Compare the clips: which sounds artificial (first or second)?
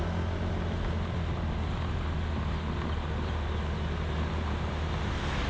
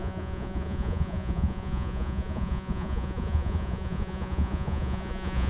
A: second